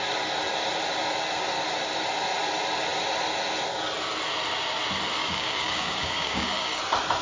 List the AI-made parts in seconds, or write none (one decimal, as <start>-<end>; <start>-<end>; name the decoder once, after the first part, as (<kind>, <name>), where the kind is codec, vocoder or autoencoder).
5.2-6.8 (codec, DAC)